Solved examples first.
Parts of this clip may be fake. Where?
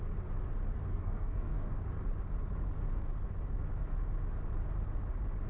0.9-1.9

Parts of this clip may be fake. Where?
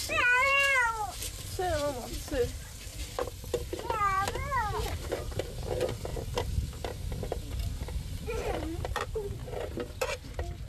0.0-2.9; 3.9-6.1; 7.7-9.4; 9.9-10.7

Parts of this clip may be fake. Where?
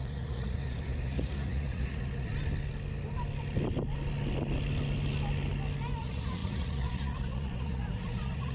0.0-2.3; 6.0-8.5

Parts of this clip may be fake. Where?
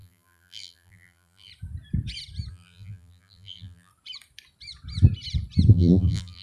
0.0-1.5; 2.5-3.9; 5.7-6.4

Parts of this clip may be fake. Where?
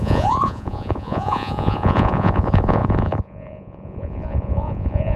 0.0-5.2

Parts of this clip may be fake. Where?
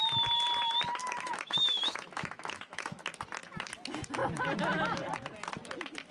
1.0-3.0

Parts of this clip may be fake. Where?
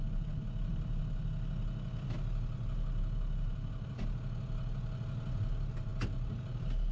none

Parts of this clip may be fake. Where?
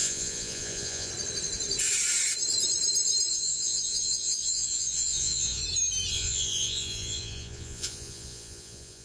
0.0-1.1; 3.3-5.6; 6.1-9.0